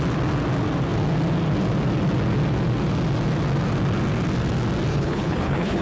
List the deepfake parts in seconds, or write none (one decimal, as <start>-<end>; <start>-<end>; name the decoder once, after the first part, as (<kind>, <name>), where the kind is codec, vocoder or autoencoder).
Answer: 4.9-5.8 (codec, HILCodec)